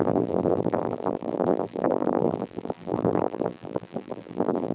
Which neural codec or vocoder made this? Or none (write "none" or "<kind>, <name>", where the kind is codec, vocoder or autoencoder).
vocoder, BigVGAN v2